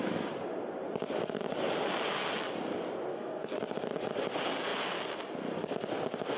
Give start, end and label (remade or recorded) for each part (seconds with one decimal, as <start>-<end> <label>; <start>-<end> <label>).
0.0-3.1 recorded; 3.1-3.6 remade; 3.6-6.4 recorded